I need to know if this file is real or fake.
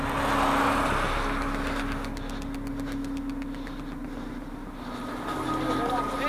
real